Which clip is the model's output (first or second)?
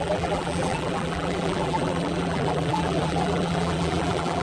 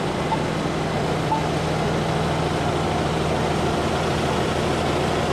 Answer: first